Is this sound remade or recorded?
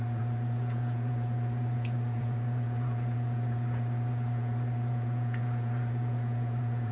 remade